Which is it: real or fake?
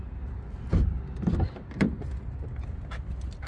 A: real